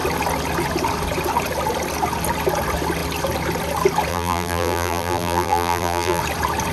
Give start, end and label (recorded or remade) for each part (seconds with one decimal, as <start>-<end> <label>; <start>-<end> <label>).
0.0-4.1 recorded; 4.1-6.2 remade; 6.2-6.7 recorded